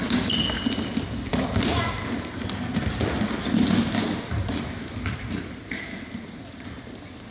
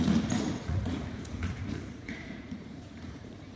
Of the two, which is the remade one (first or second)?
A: second